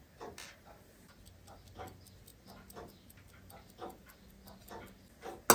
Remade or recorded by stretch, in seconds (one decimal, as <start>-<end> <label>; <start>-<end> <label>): 0.0-5.5 recorded